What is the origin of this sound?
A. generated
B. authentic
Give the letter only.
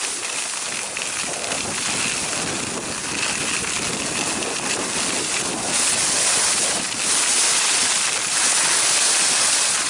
B